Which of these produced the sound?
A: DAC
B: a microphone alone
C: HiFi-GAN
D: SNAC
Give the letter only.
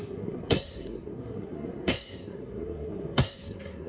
D